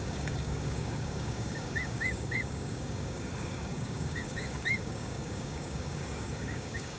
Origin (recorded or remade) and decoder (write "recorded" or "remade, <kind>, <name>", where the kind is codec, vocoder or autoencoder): remade, codec, DAC